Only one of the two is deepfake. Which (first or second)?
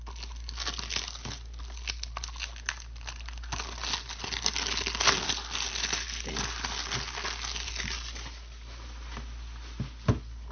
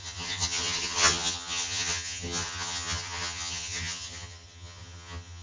second